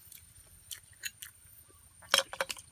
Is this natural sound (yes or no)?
yes